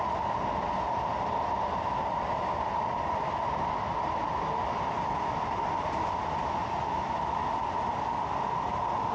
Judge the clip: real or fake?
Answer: real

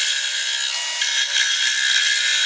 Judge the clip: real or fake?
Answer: real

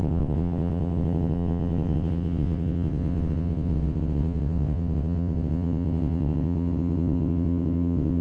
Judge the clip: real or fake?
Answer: fake